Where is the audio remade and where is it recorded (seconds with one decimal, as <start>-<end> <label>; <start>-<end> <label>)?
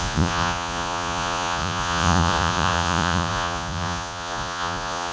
0.0-5.1 remade